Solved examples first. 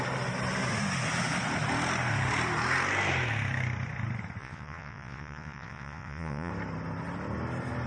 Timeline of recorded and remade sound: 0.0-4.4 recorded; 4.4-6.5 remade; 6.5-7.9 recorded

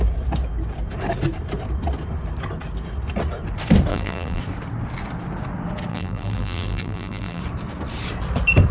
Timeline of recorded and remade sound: 0.0-3.9 recorded; 3.9-4.4 remade; 4.4-5.9 recorded; 5.9-7.4 remade; 7.4-8.7 recorded

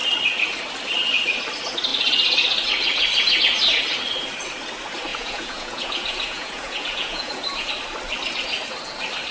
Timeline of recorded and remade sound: 0.0-5.1 recorded; 5.1-7.7 remade; 7.7-9.3 recorded

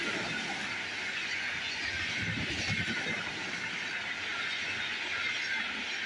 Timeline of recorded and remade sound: 0.0-1.0 recorded; 1.0-2.1 remade; 2.1-4.3 recorded; 4.3-5.2 remade; 5.2-6.1 recorded